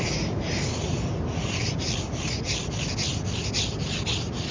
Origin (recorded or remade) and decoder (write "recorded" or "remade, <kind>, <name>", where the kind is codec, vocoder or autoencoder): recorded